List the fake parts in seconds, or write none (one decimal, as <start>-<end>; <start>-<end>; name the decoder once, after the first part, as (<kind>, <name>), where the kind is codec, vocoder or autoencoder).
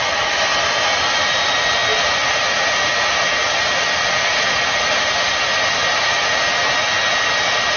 none